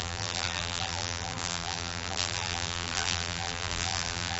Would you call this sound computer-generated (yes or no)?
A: yes